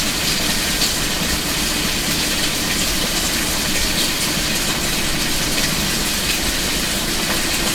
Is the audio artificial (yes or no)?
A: no